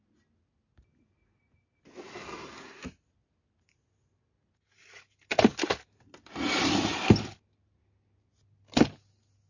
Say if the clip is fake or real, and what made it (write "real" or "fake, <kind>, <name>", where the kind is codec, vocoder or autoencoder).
real